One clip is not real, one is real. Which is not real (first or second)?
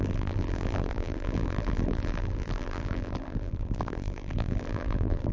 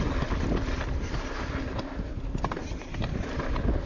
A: first